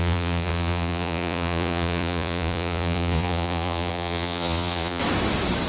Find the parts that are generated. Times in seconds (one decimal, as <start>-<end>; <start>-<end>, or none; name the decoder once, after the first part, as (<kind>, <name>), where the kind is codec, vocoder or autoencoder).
0.0-5.0 (vocoder, Vocos)